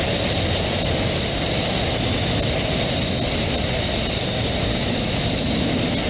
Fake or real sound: real